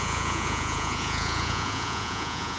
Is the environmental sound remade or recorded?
remade